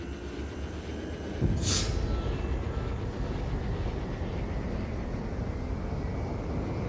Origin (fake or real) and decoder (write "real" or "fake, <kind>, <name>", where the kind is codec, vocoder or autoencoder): real